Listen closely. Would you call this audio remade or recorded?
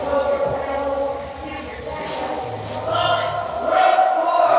recorded